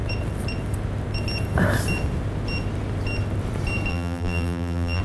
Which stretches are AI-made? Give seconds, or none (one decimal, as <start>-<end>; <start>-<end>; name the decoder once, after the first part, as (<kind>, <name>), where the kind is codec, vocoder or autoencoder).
3.9-5.0 (vocoder, BigVGAN v2)